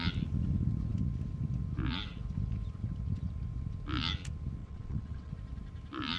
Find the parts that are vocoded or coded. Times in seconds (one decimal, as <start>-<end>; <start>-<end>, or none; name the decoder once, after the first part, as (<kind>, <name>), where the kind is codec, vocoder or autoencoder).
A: 4.6-5.3 (vocoder, WaveNeXt)